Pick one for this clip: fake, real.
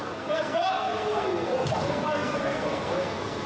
fake